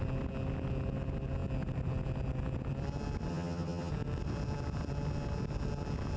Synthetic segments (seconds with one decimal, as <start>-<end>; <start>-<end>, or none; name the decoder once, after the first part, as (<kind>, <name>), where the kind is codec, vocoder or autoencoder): 3.3-3.9 (vocoder, HiFi-GAN)